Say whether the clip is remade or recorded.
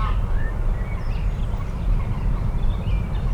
recorded